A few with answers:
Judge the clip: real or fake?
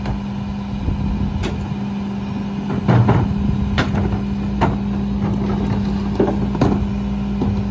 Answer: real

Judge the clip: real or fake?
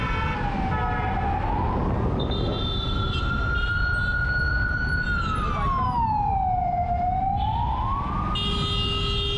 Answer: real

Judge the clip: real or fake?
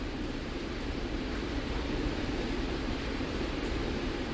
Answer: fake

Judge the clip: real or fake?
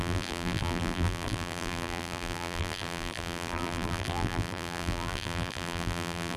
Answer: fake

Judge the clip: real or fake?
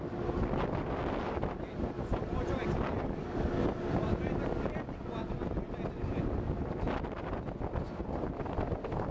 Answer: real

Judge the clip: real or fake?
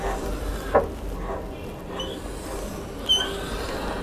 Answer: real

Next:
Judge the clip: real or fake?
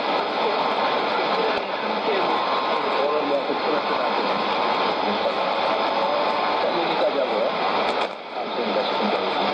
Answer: fake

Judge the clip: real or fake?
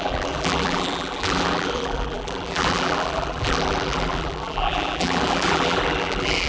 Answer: fake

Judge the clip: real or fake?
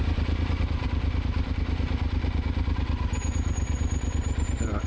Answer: fake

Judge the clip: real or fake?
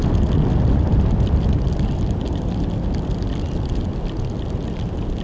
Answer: real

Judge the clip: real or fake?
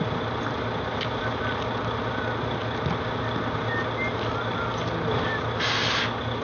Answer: real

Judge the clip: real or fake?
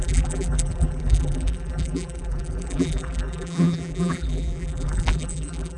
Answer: fake